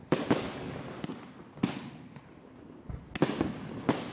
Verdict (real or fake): real